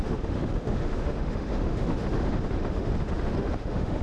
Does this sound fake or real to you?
fake